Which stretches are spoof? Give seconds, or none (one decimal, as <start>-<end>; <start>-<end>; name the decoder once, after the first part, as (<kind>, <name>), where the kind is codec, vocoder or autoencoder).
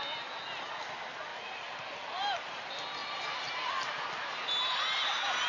1.3-2.5 (vocoder, BigVGAN v2); 3.0-3.7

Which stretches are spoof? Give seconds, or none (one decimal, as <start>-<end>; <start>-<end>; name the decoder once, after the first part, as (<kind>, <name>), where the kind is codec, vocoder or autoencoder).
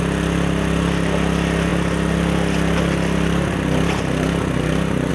none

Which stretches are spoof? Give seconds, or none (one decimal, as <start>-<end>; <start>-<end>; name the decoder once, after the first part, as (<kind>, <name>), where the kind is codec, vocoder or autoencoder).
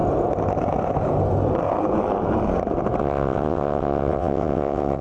3.0-5.0 (vocoder, WaveNeXt)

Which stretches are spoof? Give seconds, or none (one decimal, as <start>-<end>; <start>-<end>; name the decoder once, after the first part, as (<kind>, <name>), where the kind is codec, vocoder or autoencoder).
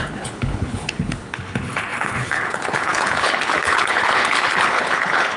0.0-5.4 (codec, HILCodec)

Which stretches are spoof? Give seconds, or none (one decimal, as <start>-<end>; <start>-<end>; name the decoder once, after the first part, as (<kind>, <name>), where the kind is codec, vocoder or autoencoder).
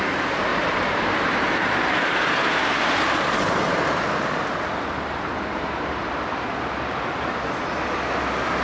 0.5-4.0 (vocoder, BigVGAN v2)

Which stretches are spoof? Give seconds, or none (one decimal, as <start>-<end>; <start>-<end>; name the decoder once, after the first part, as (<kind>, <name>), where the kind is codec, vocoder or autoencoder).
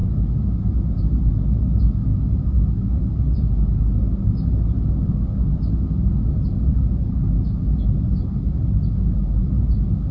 none